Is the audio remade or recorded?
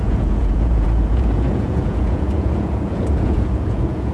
remade